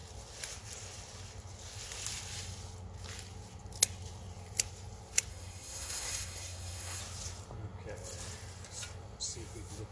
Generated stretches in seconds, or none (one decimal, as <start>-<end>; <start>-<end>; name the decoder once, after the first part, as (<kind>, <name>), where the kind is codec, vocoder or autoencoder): 5.3-7.0 (codec, SNAC)